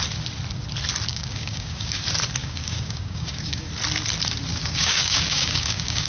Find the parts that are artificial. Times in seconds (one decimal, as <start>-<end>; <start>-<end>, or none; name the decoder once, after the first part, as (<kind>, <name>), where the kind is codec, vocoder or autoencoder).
1.1-2.0 (codec, DAC); 2.4-3.7; 4.5-6.1